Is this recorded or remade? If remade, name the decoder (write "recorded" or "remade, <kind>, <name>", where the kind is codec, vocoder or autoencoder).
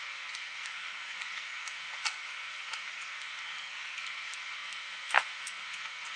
remade, codec, SNAC